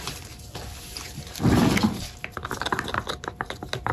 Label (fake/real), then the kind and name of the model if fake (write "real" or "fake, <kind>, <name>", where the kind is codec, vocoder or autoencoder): real